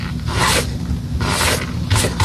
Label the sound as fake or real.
real